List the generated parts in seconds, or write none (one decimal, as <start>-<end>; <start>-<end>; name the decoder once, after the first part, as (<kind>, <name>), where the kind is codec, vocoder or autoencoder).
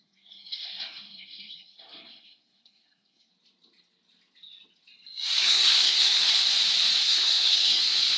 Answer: 0.0-3.3 (codec, SNAC); 5.4-6.3; 7.0-8.2